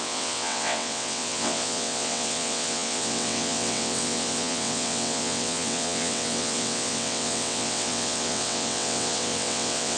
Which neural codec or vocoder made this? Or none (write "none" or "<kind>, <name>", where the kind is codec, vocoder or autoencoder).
vocoder, WaveNeXt